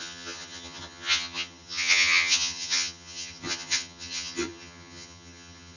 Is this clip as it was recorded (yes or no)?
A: no